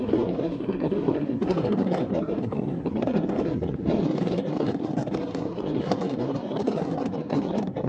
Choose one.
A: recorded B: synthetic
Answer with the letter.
B